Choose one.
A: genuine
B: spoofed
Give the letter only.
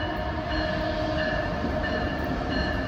A